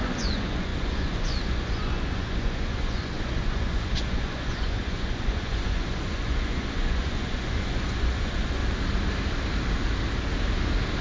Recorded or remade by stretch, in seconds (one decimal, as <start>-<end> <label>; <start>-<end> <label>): 0.0-8.6 remade; 8.6-11.0 recorded